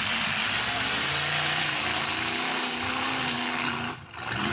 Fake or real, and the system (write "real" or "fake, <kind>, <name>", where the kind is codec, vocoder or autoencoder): real